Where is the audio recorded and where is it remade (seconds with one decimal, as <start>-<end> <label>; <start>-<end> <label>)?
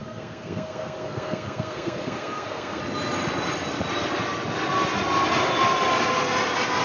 0.0-2.8 remade; 2.8-6.8 recorded